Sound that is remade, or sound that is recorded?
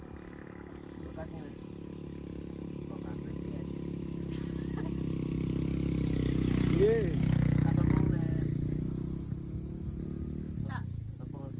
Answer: recorded